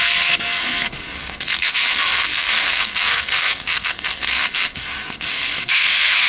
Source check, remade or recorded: remade